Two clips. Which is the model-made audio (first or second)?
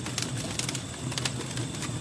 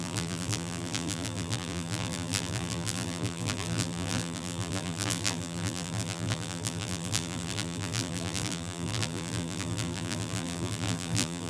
second